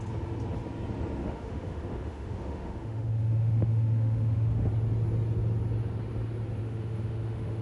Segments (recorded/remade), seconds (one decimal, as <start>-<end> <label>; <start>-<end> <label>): 0.0-1.2 recorded; 1.2-4.7 remade; 4.7-6.6 recorded; 6.6-7.6 remade